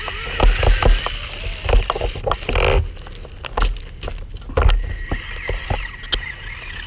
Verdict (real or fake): real